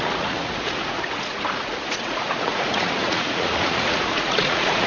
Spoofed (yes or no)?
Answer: yes